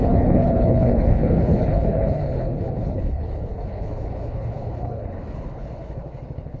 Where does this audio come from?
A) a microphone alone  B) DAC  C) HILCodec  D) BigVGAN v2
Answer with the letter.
C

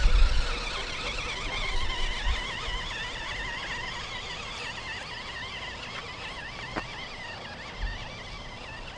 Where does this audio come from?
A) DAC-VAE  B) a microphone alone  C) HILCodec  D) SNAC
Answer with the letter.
B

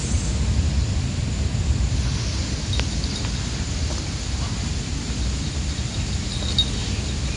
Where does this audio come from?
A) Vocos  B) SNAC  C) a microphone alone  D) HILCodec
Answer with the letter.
C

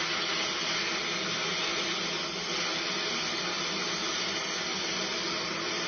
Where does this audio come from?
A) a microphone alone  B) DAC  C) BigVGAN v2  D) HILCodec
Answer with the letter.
A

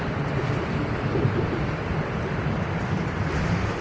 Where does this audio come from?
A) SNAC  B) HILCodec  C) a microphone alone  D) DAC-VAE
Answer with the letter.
C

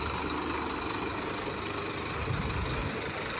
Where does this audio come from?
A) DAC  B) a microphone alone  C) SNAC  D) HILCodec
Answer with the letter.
B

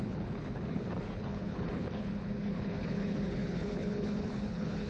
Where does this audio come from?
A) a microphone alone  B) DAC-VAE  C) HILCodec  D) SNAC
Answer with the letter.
C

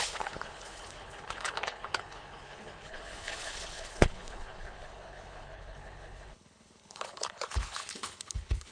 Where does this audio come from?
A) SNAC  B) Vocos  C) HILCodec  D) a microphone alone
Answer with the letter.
C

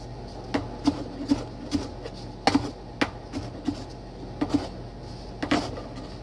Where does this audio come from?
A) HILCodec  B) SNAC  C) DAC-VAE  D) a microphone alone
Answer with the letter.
D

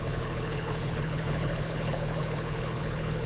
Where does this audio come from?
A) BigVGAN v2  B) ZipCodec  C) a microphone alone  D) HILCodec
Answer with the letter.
D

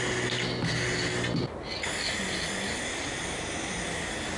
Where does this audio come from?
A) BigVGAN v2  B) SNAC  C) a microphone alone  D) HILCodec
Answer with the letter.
C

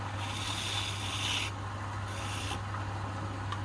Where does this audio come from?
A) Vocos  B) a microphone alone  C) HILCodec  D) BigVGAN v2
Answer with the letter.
B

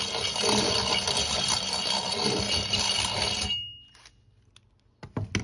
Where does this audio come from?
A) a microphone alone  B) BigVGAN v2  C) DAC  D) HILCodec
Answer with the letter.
A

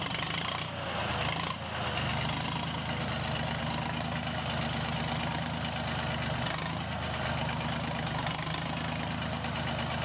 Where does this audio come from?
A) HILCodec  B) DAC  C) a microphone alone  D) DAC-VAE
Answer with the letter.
C